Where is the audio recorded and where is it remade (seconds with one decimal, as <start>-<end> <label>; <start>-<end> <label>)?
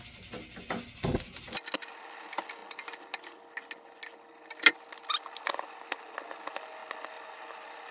0.0-7.9 recorded